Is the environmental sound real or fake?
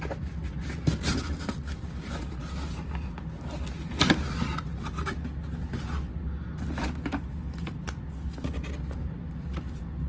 real